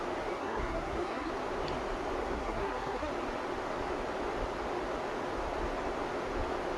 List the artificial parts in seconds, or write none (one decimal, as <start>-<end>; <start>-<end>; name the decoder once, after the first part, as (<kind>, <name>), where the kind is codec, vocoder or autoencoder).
0.4-1.3 (codec, SNAC); 2.2-3.1